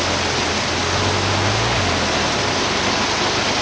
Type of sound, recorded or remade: recorded